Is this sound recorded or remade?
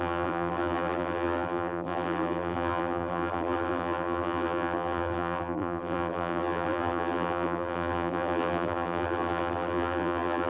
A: remade